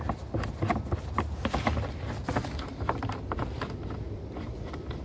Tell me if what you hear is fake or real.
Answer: real